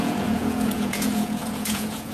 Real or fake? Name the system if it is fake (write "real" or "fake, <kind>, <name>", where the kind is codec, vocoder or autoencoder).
fake, vocoder, Vocos